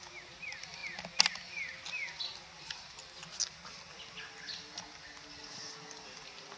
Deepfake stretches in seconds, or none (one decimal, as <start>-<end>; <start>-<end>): none